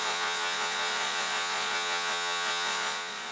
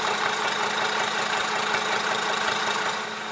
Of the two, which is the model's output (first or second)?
first